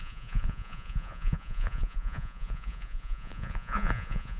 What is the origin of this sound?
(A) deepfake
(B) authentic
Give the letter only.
A